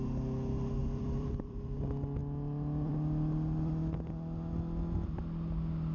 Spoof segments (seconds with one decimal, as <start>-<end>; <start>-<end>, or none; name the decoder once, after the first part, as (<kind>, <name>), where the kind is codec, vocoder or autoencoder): 0.8-1.8 (vocoder, BigVGAN v2)